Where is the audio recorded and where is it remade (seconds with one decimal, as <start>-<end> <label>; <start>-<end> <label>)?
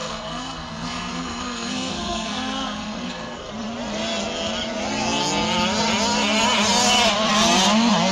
0.0-3.5 remade; 3.5-8.1 recorded